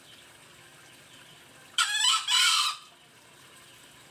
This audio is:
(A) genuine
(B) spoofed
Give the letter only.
A